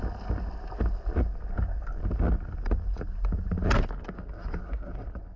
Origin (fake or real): real